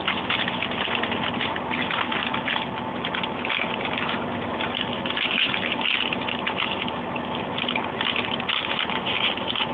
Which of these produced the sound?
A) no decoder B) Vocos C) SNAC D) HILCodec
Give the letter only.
A